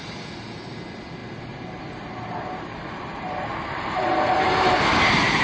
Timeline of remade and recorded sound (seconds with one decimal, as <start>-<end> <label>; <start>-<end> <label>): 0.0-5.4 recorded